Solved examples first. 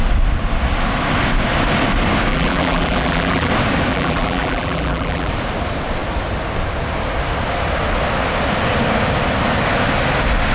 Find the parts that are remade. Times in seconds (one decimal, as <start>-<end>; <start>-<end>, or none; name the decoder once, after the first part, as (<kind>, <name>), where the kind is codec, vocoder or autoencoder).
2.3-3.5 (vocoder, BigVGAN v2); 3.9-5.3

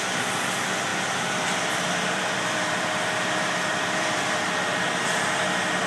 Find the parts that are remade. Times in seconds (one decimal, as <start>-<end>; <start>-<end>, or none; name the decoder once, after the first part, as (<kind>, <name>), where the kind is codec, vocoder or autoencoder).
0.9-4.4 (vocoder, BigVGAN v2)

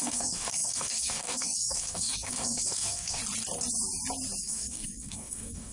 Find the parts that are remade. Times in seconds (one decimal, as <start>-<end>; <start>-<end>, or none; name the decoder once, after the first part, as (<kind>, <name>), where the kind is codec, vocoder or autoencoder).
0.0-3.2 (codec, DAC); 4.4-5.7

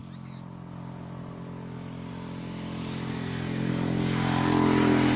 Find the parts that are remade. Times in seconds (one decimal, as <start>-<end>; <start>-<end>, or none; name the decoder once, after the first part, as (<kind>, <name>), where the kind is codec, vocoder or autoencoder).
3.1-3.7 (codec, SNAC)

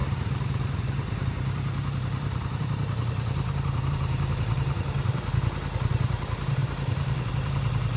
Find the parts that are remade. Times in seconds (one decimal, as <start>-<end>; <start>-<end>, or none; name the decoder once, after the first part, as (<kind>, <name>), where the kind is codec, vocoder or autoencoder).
0.0-8.0 (vocoder, BigVGAN v2)

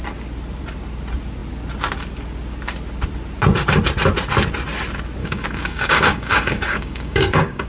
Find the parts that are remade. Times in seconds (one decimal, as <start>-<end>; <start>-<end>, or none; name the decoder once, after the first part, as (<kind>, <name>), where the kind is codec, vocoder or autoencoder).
5.2-7.7 (codec, DAC)